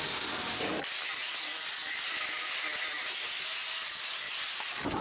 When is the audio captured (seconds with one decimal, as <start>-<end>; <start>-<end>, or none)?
0.0-5.0